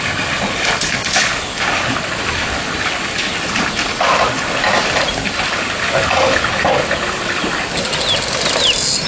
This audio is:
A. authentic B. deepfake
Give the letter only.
A